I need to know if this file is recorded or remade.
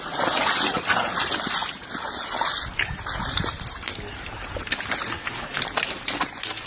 recorded